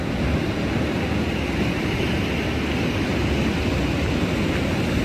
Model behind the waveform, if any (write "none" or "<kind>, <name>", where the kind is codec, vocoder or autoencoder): none